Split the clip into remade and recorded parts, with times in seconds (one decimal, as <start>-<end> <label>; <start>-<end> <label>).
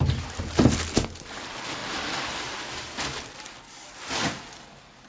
0.0-5.1 recorded